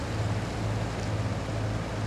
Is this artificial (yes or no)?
no